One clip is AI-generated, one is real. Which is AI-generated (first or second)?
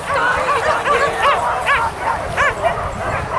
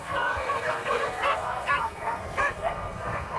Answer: second